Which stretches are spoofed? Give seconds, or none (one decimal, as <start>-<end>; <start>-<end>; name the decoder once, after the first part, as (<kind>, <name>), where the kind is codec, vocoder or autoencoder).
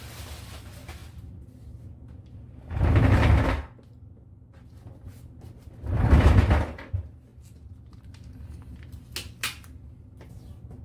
none